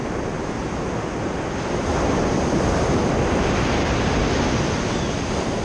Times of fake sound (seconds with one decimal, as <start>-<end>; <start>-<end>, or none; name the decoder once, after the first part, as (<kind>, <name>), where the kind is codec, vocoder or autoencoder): none